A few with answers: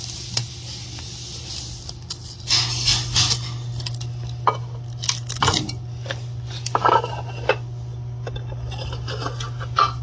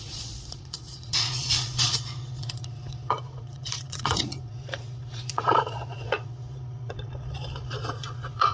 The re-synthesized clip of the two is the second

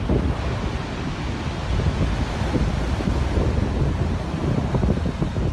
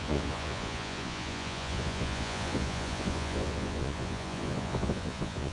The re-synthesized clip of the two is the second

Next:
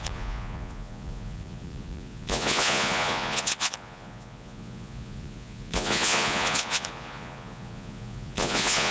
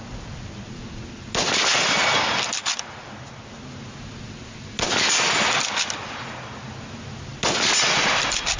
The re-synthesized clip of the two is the first